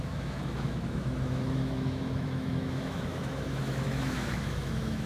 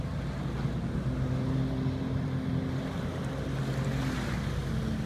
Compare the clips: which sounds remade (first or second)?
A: first